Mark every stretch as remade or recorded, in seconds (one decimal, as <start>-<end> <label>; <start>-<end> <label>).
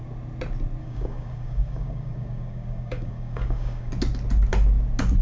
0.0-0.8 recorded; 0.8-3.9 remade; 3.9-5.2 recorded